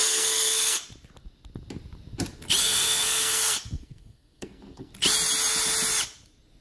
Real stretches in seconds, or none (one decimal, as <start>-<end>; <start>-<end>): 0.8-2.6; 4.9-6.6